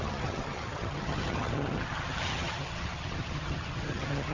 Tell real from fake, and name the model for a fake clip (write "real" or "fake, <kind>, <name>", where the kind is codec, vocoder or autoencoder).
fake, vocoder, HiFi-GAN